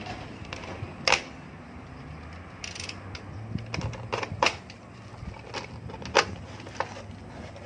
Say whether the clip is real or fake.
real